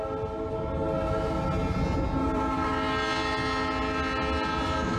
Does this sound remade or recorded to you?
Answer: recorded